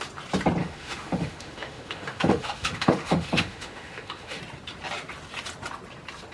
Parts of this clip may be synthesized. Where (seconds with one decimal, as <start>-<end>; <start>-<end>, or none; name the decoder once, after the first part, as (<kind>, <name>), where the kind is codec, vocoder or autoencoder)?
0.6-4.4 (autoencoder, DAC-VAE)